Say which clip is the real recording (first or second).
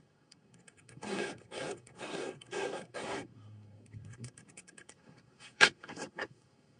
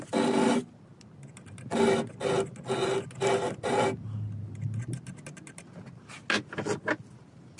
second